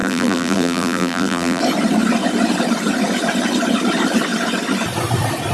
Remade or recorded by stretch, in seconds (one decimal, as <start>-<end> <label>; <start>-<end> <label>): 0.0-1.6 remade; 1.6-5.5 recorded